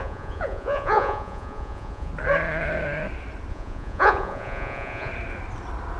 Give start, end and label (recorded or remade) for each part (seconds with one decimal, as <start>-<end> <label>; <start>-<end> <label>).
0.0-2.1 remade; 2.1-3.5 recorded; 3.5-5.1 remade; 5.1-6.0 recorded